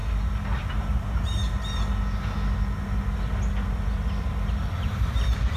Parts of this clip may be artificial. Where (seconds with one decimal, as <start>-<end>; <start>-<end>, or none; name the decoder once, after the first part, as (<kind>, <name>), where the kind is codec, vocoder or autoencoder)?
0.7-1.4 (vocoder, BigVGAN v2); 4.8-5.6

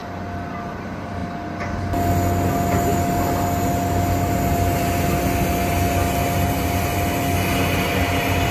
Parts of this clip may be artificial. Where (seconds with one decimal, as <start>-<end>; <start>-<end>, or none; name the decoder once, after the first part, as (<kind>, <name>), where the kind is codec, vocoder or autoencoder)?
none

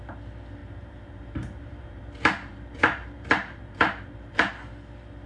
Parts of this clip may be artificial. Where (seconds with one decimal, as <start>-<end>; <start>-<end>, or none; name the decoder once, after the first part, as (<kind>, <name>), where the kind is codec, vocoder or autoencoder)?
0.6-2.0 (vocoder, BigVGAN v2); 2.5-4.5

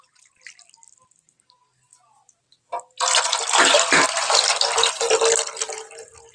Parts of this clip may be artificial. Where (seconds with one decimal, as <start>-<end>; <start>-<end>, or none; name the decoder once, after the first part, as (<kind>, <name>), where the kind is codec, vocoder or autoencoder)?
none

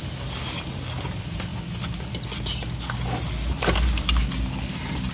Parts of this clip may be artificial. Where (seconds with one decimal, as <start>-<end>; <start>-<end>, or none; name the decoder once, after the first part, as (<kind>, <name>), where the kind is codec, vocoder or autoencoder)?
none